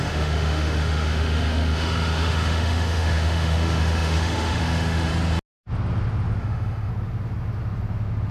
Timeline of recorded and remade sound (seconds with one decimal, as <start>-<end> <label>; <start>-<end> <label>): 0.0-5.1 remade; 5.1-6.4 recorded; 6.4-6.9 remade; 6.9-8.3 recorded